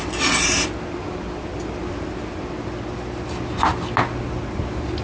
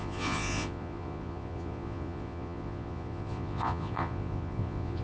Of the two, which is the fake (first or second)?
second